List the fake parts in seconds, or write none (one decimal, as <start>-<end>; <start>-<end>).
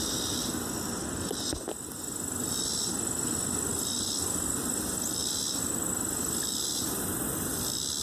none